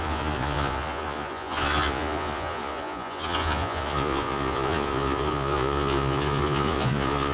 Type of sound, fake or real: fake